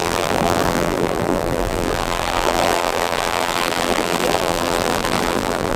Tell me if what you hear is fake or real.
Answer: fake